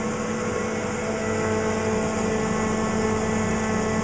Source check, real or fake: real